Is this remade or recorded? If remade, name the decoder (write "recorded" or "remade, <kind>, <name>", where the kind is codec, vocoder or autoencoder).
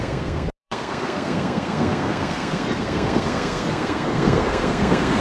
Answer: remade, codec, SNAC